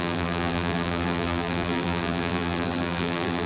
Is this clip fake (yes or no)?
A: yes